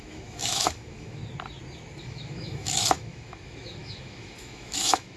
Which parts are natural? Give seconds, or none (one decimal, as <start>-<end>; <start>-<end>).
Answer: 1.2-2.0